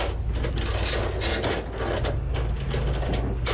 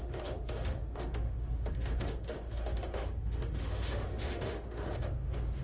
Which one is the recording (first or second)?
first